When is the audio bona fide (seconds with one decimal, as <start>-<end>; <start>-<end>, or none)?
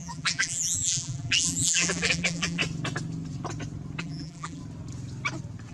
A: 2.6-4.0; 4.6-5.7